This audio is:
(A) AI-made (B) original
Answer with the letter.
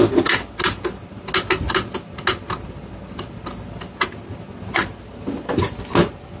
B